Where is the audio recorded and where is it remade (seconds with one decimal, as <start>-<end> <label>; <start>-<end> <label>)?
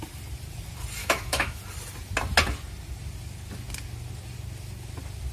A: 0.0-1.0 recorded; 1.0-1.6 remade; 1.6-5.3 recorded